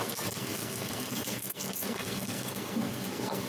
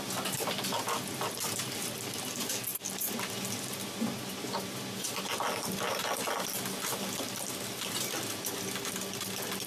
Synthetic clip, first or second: first